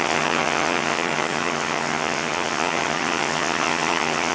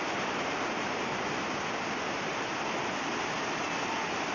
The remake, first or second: first